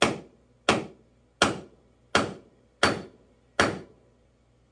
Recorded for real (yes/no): yes